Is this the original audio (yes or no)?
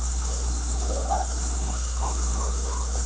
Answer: no